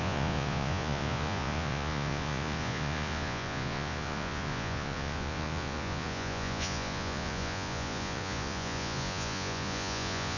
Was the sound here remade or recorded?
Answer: remade